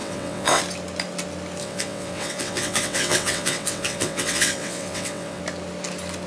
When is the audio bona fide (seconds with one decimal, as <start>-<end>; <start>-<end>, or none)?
0.6-1.6; 5.4-6.3